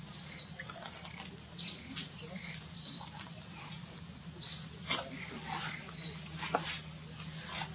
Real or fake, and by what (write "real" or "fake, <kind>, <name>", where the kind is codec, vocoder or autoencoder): real